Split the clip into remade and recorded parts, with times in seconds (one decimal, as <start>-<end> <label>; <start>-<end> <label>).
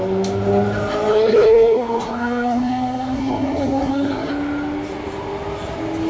0.0-1.1 recorded; 1.1-4.3 remade; 4.3-6.1 recorded